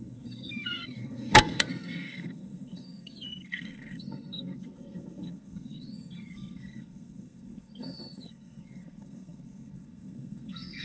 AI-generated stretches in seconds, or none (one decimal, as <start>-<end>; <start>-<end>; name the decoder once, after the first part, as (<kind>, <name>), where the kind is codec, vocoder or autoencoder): 0.0-10.8 (codec, SNAC)